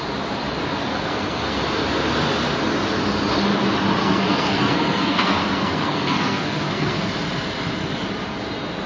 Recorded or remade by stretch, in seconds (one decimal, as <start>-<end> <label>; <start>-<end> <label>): 0.0-0.9 recorded; 0.9-1.6 remade; 1.6-4.0 recorded; 4.0-7.1 remade; 7.1-8.9 recorded